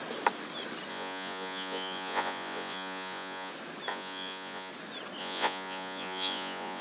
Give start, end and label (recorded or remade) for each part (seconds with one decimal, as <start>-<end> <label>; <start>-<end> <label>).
0.0-0.9 recorded; 0.9-3.5 remade; 3.5-3.9 recorded; 3.9-4.7 remade; 4.7-5.2 recorded; 5.2-6.8 remade